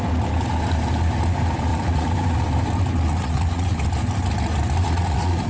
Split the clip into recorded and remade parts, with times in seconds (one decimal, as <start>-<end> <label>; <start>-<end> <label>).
0.0-1.7 recorded; 1.7-2.3 remade; 2.3-3.1 recorded; 3.1-3.8 remade; 3.8-4.8 recorded; 4.8-5.5 remade